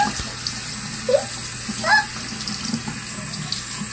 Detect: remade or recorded recorded